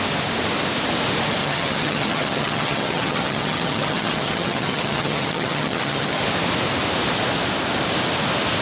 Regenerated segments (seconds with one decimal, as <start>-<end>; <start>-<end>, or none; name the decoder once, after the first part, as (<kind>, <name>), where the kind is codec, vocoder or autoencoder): 1.4-6.2 (vocoder, HiFi-GAN)